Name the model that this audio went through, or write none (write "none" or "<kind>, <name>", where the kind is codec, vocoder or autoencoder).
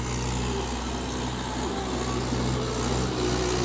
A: none